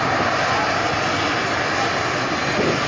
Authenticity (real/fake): real